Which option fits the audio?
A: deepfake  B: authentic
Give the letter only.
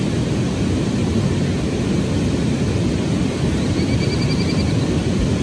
B